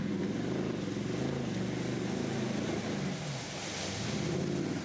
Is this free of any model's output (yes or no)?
yes